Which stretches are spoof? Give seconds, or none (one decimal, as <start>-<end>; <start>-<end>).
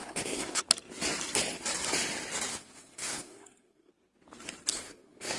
0.0-0.6; 2.5-3.9; 4.7-5.4